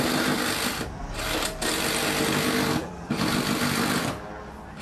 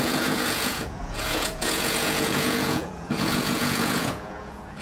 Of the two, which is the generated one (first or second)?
second